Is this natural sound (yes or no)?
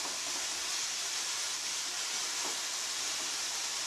yes